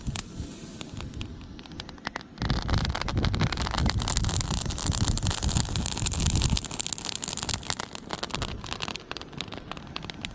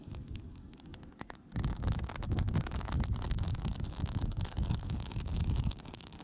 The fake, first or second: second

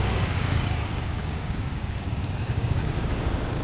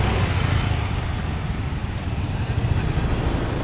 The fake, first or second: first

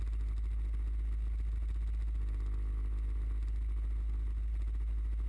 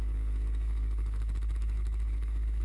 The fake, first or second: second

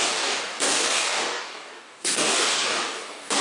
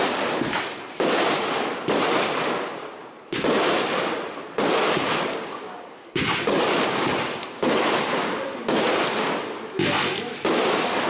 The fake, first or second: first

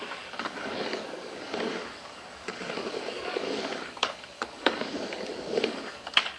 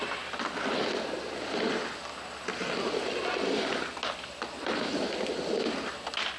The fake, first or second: first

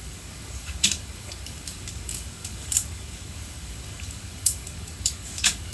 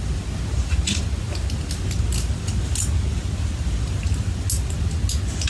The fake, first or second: first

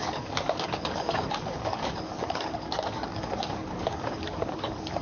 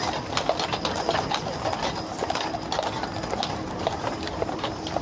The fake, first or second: first